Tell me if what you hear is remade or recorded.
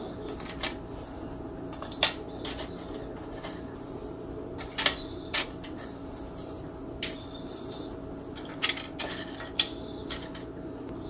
recorded